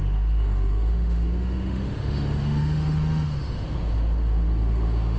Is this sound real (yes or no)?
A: no